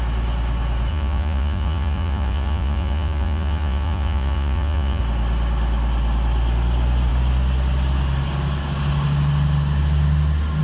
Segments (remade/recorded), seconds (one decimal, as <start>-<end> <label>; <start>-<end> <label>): 0.0-0.9 recorded; 0.9-5.0 remade; 5.0-10.6 recorded